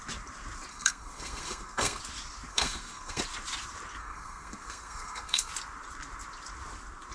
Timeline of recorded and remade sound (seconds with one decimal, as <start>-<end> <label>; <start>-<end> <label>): 0.0-0.7 recorded; 0.7-2.0 remade; 2.0-2.5 recorded; 2.5-3.2 remade; 3.2-4.0 recorded; 4.0-5.5 remade; 5.5-7.1 recorded